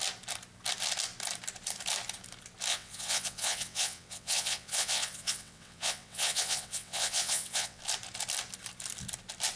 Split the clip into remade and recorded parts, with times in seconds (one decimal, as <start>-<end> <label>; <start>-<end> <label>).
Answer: 0.0-2.7 recorded; 2.7-7.8 remade; 7.8-9.6 recorded